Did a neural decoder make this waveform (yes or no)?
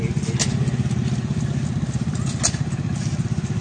no